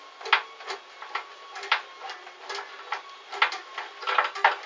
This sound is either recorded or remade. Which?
recorded